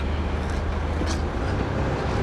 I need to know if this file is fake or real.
real